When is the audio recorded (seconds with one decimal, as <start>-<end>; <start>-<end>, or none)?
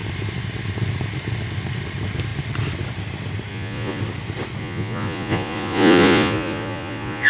0.0-3.5; 4.0-4.6